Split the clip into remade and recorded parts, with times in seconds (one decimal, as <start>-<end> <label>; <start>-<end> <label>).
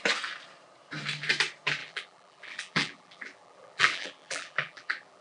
0.0-1.8 recorded; 1.8-5.2 remade